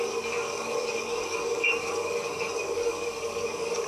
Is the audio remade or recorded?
remade